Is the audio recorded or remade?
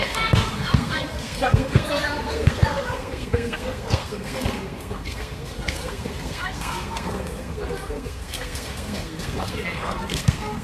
remade